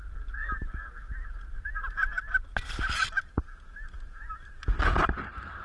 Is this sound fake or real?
real